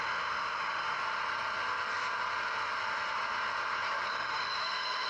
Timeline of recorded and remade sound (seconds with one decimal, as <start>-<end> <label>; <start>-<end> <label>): 0.0-1.0 remade; 1.0-4.1 recorded; 4.1-5.1 remade